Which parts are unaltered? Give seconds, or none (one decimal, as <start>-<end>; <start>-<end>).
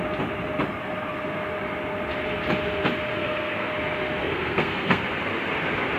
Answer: 0.0-3.1; 3.7-4.2; 5.0-6.0